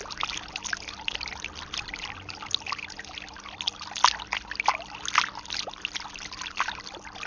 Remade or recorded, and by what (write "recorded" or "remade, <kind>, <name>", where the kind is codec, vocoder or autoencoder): recorded